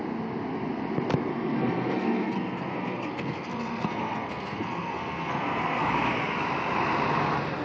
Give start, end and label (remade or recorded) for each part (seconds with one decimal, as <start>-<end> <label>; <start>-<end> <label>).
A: 0.0-1.3 recorded; 1.3-5.9 remade; 5.9-7.6 recorded